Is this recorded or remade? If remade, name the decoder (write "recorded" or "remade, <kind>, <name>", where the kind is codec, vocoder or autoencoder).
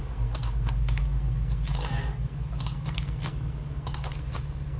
remade, codec, SNAC